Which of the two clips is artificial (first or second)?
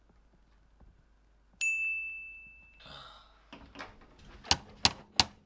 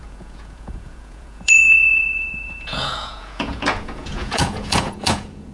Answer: second